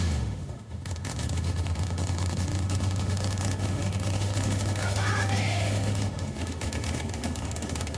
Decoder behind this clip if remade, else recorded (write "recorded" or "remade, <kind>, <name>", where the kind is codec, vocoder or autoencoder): remade, autoencoder, DAC-VAE